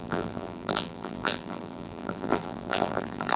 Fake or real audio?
fake